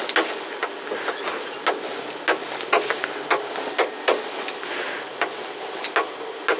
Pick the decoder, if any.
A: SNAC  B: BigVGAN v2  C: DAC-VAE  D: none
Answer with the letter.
D